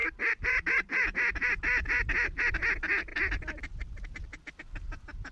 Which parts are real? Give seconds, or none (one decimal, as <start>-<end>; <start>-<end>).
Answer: 3.1-4.5